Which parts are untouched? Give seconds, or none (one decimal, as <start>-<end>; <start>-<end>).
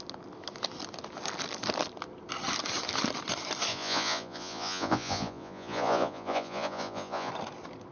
0.0-3.7; 7.3-7.9